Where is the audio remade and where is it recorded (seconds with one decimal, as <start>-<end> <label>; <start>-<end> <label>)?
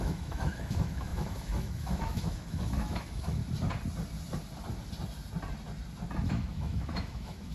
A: 0.0-3.4 remade; 3.4-6.3 recorded; 6.3-7.5 remade